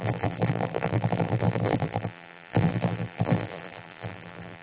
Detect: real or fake fake